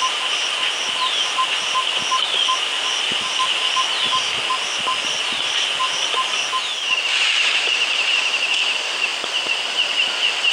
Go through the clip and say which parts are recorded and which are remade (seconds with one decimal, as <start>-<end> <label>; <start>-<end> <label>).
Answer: 0.0-10.5 recorded